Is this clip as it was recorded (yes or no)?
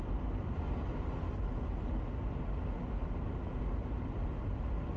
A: yes